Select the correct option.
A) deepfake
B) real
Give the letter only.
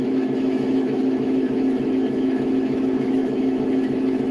A